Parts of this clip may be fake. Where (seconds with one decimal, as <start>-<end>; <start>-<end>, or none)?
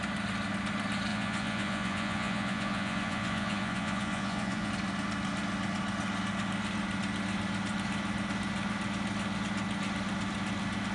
1.1-4.7